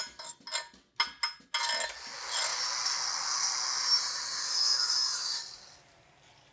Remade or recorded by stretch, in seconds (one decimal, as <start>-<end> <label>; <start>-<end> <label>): 0.0-4.4 recorded; 4.4-5.4 remade; 5.4-6.5 recorded